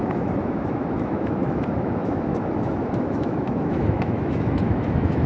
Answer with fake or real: fake